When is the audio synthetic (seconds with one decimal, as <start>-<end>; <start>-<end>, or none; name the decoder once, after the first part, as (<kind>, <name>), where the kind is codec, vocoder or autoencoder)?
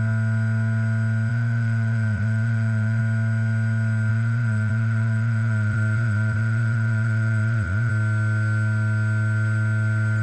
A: 1.3-3.0 (vocoder, Vocos); 4.1-7.9